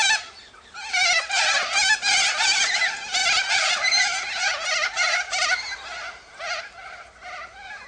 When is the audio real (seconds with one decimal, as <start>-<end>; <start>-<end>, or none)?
0.0-7.9

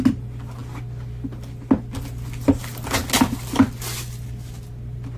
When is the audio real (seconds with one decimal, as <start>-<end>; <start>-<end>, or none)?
0.0-5.2

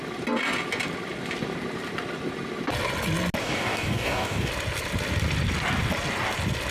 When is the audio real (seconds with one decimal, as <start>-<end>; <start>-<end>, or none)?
0.0-3.4; 4.5-6.7

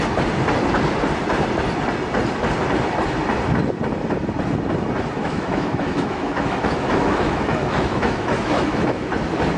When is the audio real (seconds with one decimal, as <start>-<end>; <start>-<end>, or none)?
0.0-5.2; 9.1-9.6

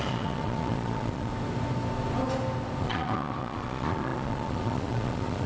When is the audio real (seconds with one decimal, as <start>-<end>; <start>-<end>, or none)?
1.3-2.8

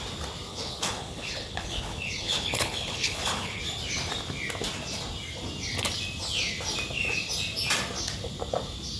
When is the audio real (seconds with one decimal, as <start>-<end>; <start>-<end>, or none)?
0.0-0.5; 3.6-9.0